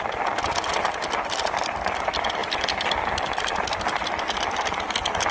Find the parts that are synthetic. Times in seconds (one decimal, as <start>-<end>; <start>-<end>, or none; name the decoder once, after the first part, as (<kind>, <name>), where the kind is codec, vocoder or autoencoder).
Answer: none